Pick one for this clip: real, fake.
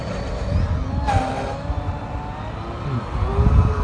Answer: real